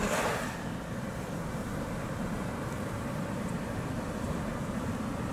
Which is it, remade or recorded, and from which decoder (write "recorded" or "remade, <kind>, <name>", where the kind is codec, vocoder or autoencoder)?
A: remade, vocoder, BigVGAN v2